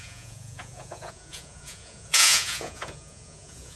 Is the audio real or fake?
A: fake